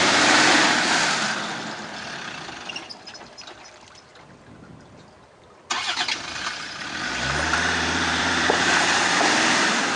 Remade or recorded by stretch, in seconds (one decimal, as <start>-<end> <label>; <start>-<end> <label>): 0.0-4.1 remade; 4.1-6.8 recorded; 6.8-10.0 remade